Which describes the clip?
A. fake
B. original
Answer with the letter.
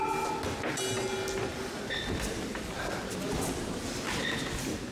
B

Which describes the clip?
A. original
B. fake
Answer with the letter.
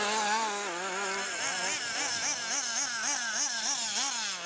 A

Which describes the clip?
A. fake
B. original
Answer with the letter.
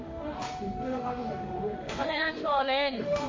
A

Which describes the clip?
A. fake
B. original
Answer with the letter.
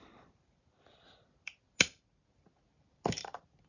B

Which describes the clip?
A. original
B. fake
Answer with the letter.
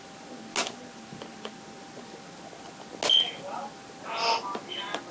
A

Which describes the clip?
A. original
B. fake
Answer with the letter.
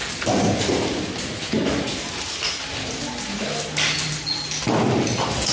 A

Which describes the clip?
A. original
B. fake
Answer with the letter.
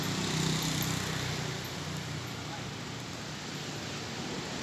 A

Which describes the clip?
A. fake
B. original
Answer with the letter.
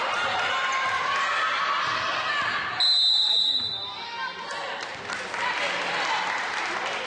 B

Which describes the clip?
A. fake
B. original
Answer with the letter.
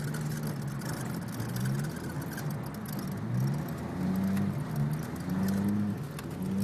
B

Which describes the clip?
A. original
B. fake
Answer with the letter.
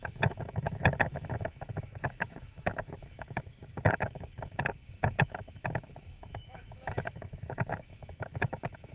B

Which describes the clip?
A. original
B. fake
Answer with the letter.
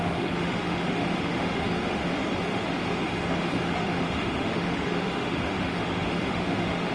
B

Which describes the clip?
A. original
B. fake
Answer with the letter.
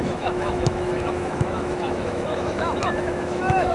B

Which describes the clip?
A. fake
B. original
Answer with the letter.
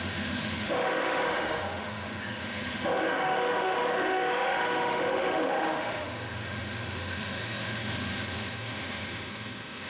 A